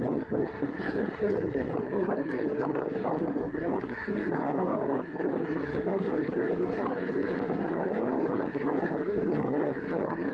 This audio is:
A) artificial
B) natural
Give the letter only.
A